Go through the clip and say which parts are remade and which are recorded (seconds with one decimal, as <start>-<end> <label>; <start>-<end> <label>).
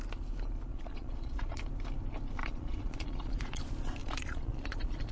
0.0-0.7 recorded; 0.7-1.6 remade; 1.6-2.4 recorded; 2.4-3.6 remade; 3.6-4.0 recorded; 4.0-5.1 remade